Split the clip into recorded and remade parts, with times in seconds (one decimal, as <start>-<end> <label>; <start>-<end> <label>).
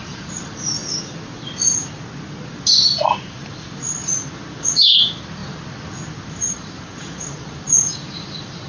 0.0-0.8 remade; 0.8-3.3 recorded; 3.3-5.4 remade; 5.4-6.3 recorded; 6.3-8.7 remade